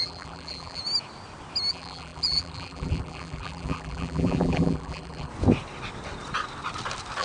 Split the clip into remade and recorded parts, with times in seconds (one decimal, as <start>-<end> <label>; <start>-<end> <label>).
0.0-0.8 remade; 0.8-1.7 recorded; 1.7-5.3 remade; 5.3-7.2 recorded